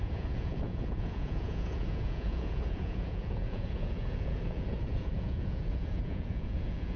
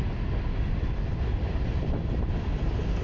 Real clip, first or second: second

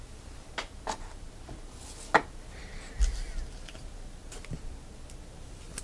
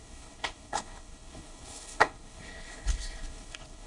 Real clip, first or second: first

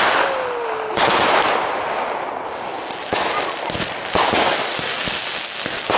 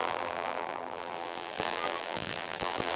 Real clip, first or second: first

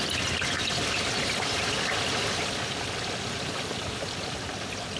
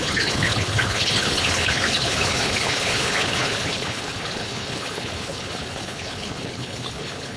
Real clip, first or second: first